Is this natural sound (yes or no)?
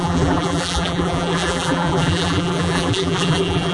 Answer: no